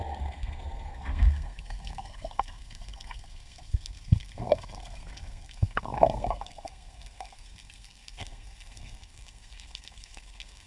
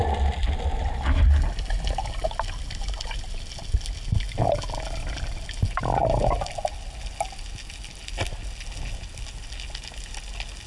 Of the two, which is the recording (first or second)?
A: second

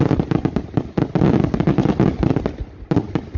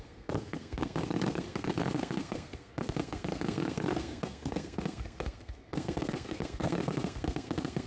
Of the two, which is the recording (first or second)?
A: first